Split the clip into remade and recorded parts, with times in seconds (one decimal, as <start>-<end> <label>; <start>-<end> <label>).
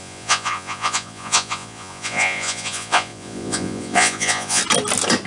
0.0-4.6 remade; 4.6-5.3 recorded